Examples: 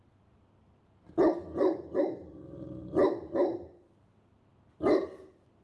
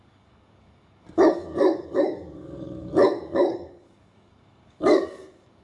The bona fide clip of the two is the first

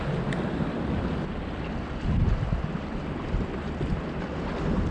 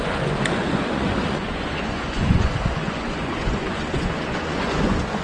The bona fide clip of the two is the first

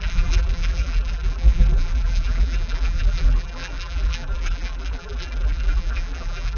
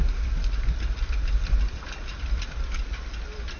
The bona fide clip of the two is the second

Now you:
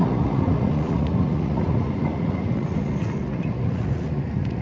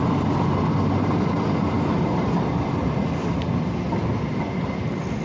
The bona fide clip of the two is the second